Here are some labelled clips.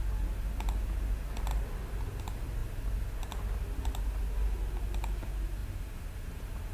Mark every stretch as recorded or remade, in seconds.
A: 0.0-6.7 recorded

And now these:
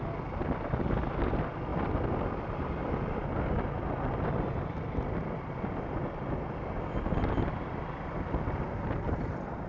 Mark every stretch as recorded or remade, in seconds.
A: 0.0-9.7 recorded

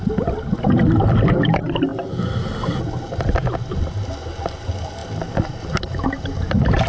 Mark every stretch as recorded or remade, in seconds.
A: 0.0-6.9 recorded

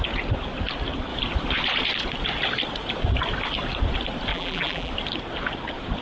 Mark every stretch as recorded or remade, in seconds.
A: 0.0-4.3 recorded; 4.3-4.9 remade; 4.9-6.0 recorded

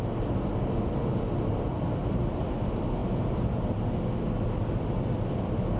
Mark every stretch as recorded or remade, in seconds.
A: 0.0-5.8 recorded

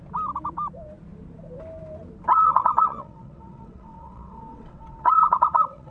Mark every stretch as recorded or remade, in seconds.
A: 0.0-2.3 recorded; 2.3-5.9 remade